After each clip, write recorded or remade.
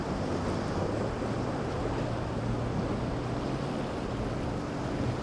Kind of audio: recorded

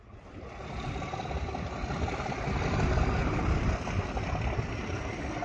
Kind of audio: remade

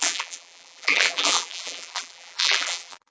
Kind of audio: remade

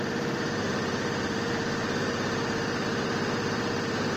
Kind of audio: remade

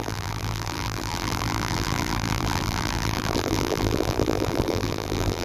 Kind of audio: remade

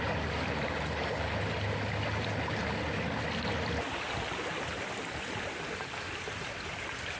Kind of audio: recorded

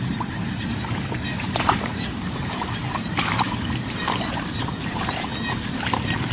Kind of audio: remade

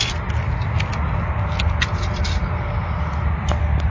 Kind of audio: recorded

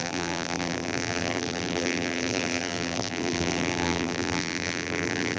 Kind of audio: remade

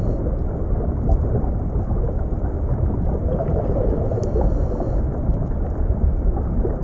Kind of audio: remade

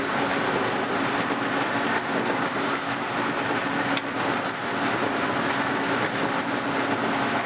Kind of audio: recorded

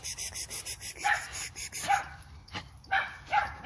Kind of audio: remade